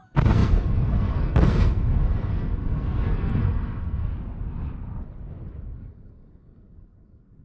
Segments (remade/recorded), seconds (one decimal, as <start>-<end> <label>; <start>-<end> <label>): 0.0-4.1 remade; 4.1-5.8 recorded; 5.8-7.4 remade